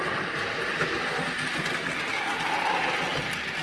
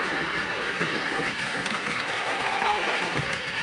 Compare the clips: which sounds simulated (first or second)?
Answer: second